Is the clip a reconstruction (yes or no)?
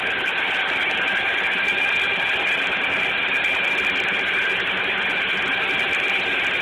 no